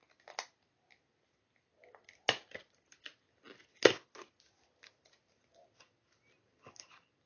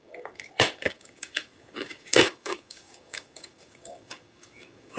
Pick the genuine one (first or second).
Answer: first